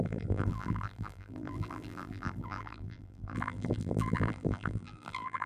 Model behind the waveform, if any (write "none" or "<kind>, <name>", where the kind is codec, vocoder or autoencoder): vocoder, BigVGAN v2